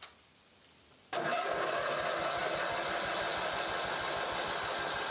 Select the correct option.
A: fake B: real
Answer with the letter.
B